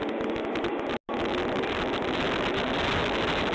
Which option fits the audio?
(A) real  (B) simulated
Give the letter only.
A